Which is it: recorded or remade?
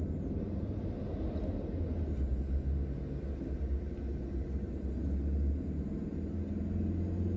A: recorded